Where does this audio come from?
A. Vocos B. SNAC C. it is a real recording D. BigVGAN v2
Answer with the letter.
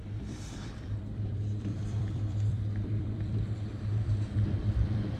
D